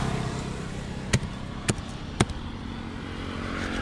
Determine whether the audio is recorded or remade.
recorded